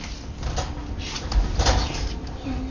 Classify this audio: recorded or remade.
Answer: recorded